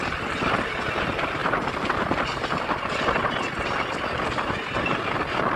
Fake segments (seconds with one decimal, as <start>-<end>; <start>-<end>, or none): none